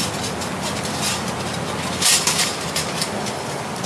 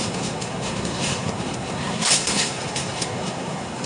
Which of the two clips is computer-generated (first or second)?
second